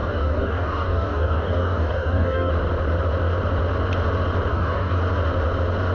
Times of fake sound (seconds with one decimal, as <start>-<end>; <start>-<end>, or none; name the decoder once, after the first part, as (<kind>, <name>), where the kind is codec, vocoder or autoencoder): 0.0-2.5 (codec, DAC); 4.5-5.0

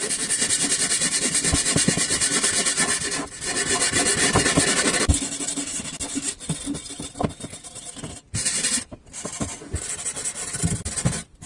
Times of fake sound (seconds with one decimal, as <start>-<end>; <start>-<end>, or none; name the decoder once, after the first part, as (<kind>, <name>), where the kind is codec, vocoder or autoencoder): none

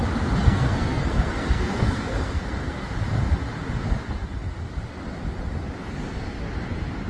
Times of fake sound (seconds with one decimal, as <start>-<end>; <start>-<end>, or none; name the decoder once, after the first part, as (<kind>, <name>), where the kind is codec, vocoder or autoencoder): 0.4-2.9 (codec, SNAC)

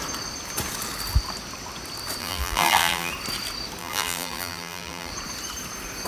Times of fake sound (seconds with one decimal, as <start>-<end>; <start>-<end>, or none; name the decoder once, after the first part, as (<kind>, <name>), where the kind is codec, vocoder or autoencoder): 2.2-3.1 (vocoder, BigVGAN v2); 3.8-5.1

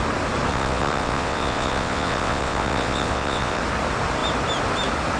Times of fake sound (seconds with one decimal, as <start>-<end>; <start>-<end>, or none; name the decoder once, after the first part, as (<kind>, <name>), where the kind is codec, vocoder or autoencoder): 0.5-3.6 (vocoder, WaveNeXt)

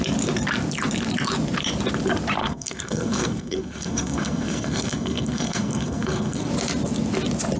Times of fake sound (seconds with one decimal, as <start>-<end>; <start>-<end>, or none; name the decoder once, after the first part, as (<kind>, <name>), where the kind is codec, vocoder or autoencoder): 2.4-6.5 (codec, SNAC)

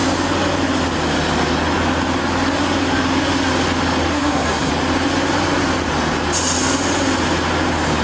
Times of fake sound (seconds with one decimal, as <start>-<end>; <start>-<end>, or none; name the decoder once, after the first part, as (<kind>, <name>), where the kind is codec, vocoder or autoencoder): 4.1-4.7 (codec, SNAC)

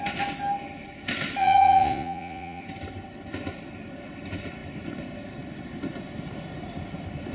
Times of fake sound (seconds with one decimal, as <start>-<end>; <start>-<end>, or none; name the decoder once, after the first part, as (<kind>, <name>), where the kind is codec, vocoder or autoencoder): 1.4-2.6 (vocoder, Vocos)